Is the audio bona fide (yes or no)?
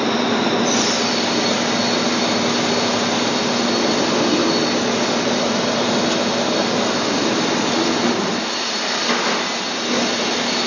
yes